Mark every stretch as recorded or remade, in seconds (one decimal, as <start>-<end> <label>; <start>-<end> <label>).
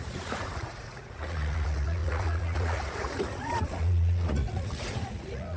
0.0-5.6 remade